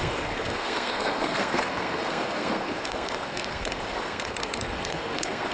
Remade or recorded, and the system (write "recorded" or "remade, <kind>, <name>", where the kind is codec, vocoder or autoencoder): remade, codec, SNAC